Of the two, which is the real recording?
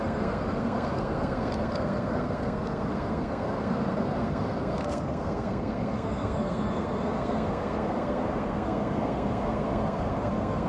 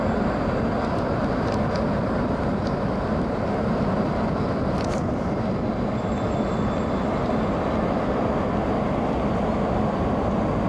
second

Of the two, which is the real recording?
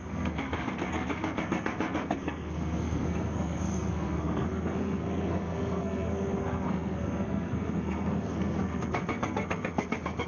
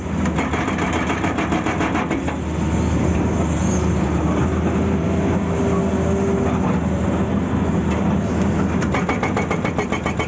second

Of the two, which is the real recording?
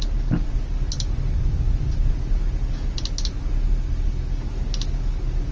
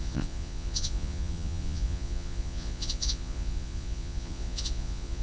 first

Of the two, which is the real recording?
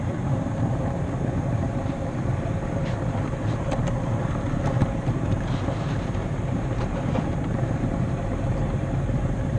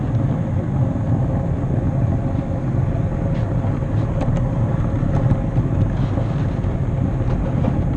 second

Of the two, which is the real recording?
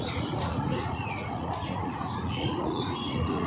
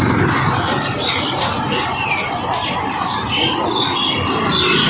second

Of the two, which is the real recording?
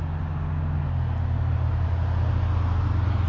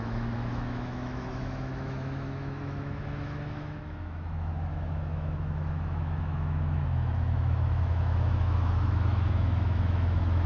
first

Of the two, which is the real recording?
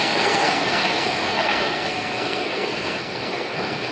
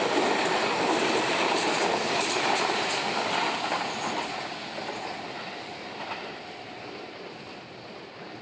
second